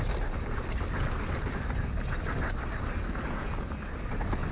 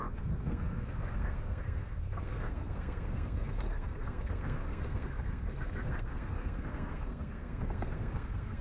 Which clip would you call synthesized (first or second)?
second